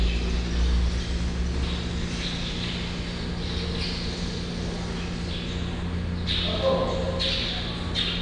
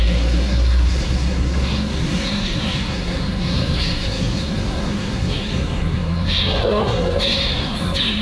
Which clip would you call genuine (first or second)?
first